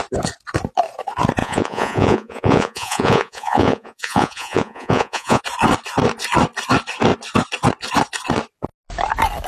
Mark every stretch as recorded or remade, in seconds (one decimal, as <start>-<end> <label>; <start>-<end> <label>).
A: 0.0-1.4 recorded; 1.4-5.4 remade; 5.4-9.5 recorded